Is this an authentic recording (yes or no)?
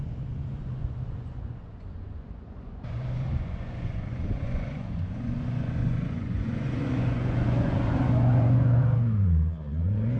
no